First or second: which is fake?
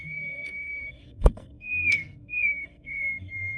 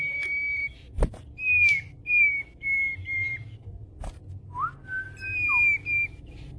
first